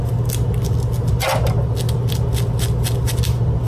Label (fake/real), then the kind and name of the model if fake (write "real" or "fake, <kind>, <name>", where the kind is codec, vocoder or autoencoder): real